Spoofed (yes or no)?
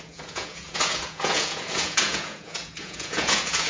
yes